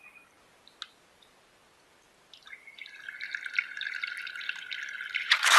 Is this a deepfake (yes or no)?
no